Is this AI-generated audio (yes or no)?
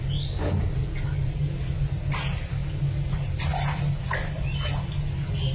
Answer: no